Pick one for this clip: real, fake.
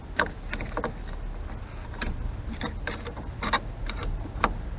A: real